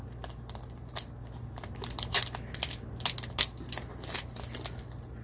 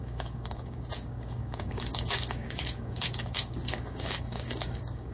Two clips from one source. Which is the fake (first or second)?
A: second